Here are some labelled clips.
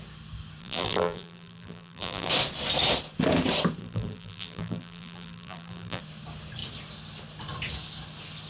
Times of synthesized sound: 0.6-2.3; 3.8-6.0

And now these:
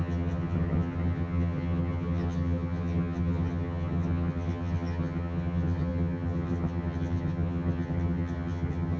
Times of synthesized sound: 0.0-9.0

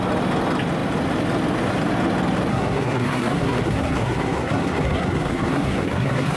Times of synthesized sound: 2.5-6.4

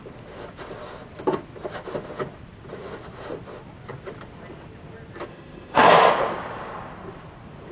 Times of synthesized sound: 5.3-6.1

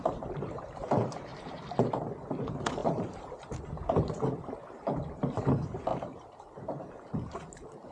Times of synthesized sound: 0.0-1.3; 2.3-7.9

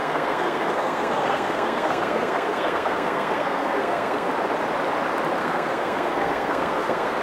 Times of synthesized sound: 0.0-4.3; 5.4-7.2

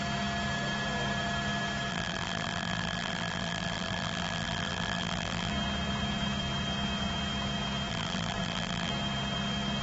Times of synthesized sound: 1.9-5.5; 7.9-8.9

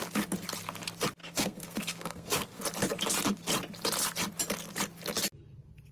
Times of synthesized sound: 1.2-2.6